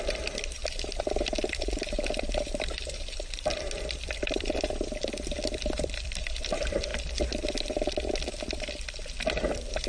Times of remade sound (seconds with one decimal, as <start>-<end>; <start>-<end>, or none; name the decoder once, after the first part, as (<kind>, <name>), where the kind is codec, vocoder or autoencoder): 0.0-6.9 (vocoder, BigVGAN v2); 9.4-9.9